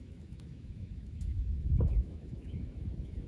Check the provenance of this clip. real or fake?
fake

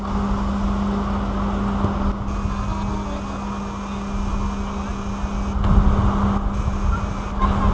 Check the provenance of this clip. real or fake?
real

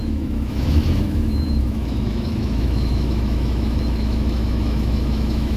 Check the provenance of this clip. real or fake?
fake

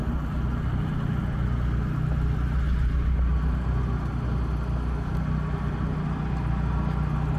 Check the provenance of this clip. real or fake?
real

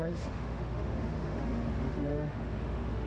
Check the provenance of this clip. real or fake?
fake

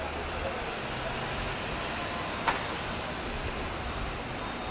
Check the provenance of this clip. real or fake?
real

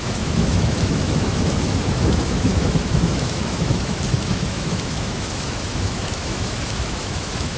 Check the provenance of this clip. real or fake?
fake